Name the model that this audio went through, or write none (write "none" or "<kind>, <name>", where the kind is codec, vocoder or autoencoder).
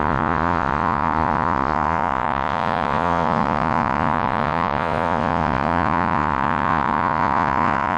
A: vocoder, Vocos